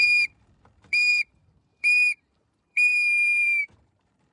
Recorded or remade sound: remade